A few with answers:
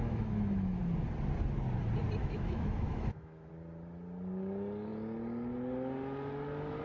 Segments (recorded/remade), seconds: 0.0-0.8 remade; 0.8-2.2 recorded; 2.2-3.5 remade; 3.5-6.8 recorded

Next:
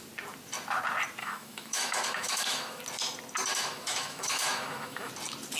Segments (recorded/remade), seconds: 0.0-1.2 recorded; 1.2-2.8 remade; 2.8-3.5 recorded; 3.5-5.1 remade; 5.1-5.6 recorded

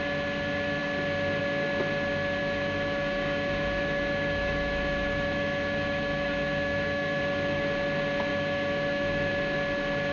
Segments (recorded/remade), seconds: 0.0-2.4 recorded; 2.4-7.2 remade; 7.2-8.3 recorded; 8.3-9.3 remade; 9.3-10.1 recorded

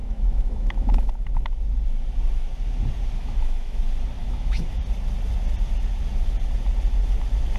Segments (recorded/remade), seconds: 0.0-1.1 remade; 1.1-3.2 recorded; 3.2-3.8 remade; 3.8-4.2 recorded; 4.2-4.8 remade; 4.8-7.6 recorded